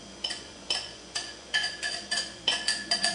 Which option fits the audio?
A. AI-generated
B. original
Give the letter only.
A